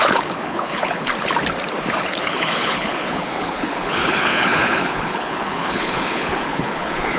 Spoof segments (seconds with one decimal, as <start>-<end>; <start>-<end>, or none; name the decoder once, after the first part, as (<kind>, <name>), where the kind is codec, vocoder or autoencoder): 0.0-1.1 (codec, HILCodec); 2.0-7.2